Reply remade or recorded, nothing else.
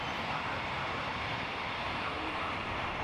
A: remade